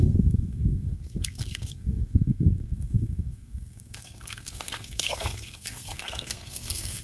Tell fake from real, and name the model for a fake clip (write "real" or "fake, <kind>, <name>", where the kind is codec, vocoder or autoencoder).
fake, codec, SNAC